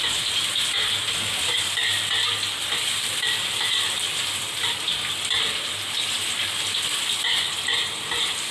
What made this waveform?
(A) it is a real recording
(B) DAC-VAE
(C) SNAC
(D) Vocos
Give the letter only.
A